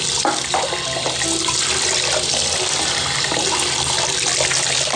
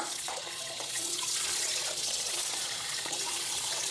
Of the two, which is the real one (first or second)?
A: first